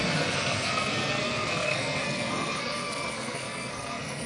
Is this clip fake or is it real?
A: fake